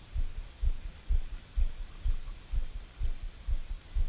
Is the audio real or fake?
real